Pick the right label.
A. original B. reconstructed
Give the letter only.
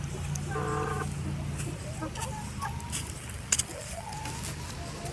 A